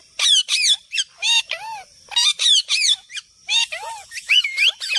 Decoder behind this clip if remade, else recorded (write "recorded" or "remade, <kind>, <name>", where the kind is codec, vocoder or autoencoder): remade, vocoder, BigVGAN v2